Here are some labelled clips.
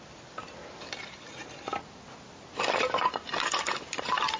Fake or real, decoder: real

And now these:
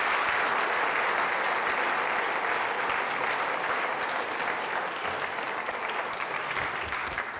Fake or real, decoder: real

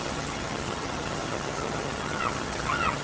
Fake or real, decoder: fake, vocoder, HiFi-GAN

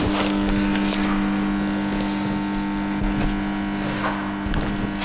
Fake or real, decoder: real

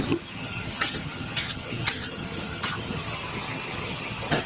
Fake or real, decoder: fake, vocoder, HiFi-GAN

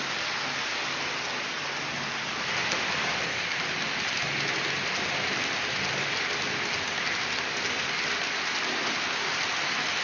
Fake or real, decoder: real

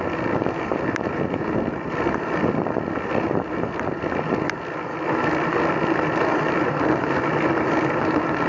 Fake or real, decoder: real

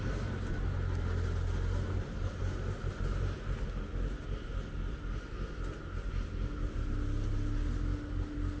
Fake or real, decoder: real